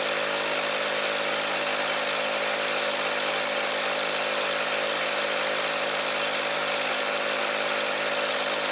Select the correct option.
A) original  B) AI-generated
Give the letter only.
A